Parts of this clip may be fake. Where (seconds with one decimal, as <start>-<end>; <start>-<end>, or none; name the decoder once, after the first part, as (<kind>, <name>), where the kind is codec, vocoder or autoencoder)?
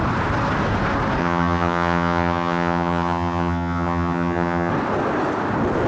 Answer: 1.2-4.7 (vocoder, HiFi-GAN)